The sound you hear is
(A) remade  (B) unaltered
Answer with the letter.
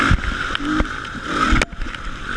B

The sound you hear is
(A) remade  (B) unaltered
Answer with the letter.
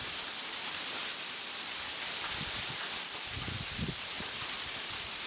A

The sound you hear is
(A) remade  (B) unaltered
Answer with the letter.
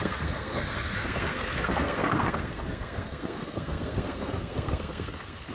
A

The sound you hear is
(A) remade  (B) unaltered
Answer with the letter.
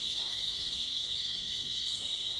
A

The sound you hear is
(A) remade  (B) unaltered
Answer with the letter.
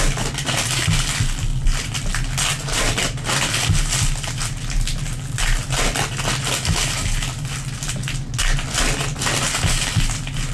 B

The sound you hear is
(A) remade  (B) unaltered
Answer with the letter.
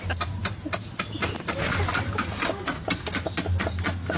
B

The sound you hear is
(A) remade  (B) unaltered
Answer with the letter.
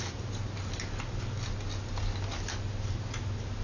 B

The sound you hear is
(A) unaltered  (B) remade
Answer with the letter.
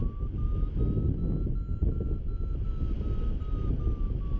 A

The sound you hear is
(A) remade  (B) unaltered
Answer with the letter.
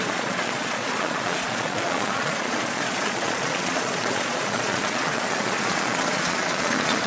A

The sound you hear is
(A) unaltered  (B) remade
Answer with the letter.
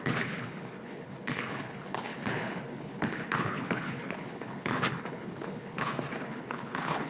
B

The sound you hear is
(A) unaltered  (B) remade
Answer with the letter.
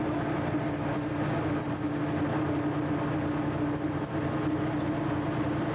A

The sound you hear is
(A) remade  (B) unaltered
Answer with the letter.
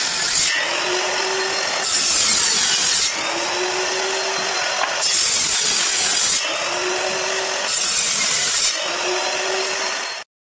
B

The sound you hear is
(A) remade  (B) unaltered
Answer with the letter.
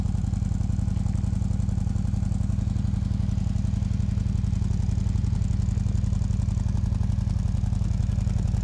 B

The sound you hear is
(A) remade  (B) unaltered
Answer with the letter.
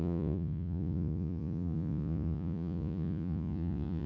A